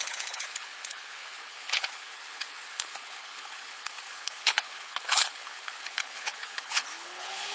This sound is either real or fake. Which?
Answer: fake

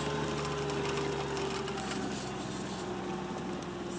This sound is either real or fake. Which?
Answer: real